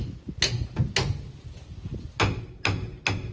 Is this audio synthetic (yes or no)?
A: no